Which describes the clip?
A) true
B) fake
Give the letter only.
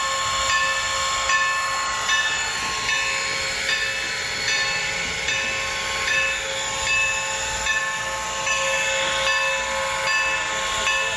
A